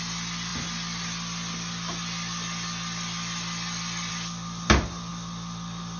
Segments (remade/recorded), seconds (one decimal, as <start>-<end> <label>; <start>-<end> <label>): 0.0-6.0 recorded